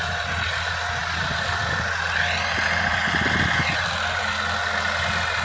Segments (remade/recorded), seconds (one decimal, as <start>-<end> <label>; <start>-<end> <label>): 0.0-5.4 recorded